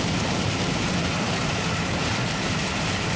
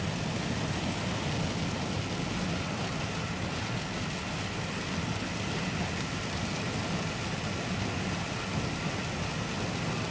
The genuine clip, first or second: second